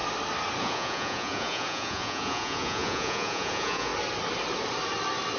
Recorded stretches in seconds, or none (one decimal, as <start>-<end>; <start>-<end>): 0.0-0.6; 3.9-5.4